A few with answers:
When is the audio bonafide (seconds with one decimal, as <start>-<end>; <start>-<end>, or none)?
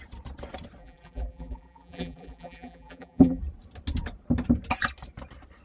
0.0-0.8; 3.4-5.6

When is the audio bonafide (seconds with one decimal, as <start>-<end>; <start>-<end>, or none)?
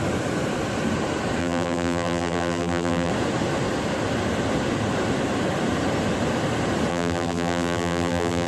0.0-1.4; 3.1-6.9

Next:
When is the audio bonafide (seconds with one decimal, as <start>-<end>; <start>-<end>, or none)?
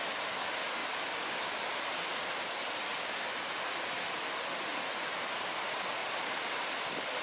0.8-3.0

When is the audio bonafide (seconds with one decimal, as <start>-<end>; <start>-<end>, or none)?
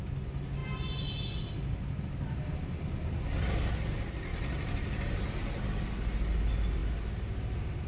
0.0-4.3; 5.3-7.9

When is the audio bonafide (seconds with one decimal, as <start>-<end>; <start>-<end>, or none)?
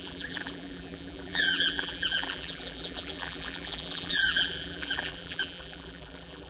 none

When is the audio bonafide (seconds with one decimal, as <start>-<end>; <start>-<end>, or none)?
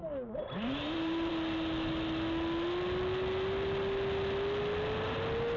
0.0-0.4; 1.3-5.6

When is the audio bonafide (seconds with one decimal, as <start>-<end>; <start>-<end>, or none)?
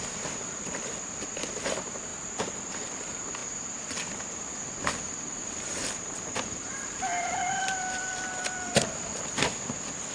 3.4-4.8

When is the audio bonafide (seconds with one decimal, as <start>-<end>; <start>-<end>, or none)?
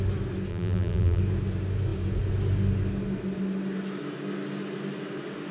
0.0-0.5; 1.2-5.5